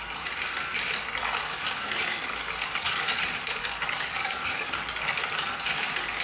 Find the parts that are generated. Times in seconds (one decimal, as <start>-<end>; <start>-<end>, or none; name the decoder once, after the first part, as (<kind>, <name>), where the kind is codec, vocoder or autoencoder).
1.2-3.2 (codec, DAC); 3.6-4.9